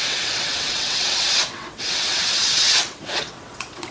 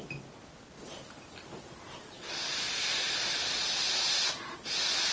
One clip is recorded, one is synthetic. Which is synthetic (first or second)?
first